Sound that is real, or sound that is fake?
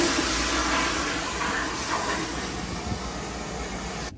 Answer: real